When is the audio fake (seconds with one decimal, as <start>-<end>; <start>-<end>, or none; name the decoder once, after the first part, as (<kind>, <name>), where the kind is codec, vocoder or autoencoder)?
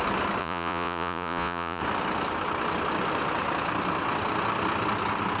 0.4-1.8 (vocoder, Vocos)